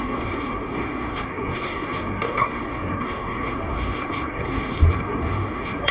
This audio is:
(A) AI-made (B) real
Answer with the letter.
A